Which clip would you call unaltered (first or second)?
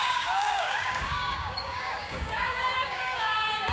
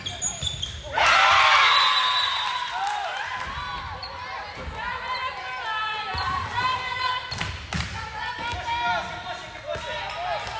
second